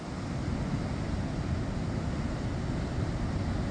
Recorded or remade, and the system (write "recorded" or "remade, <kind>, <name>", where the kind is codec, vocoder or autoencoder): recorded